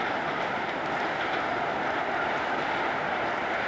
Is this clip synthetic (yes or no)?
no